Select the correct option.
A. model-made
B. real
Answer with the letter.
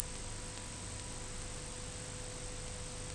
B